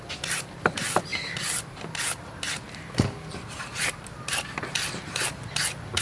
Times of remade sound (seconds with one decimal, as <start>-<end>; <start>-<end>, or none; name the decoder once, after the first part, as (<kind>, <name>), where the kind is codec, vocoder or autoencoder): none